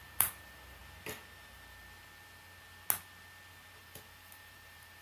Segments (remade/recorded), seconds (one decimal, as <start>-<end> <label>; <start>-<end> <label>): 0.0-0.8 remade; 0.8-3.8 recorded; 3.8-5.0 remade